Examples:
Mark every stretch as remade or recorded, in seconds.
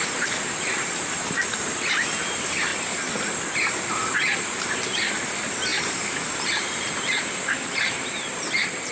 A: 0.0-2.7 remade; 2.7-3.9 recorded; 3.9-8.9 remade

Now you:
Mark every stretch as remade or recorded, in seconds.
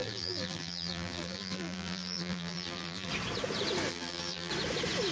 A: 0.0-3.1 remade; 3.1-3.9 recorded; 3.9-4.5 remade; 4.5-5.1 recorded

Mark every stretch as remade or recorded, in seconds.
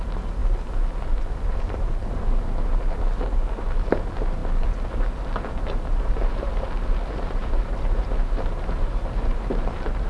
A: 0.0-0.4 remade; 0.4-1.1 recorded; 1.1-4.4 remade; 4.4-5.5 recorded; 5.5-10.1 remade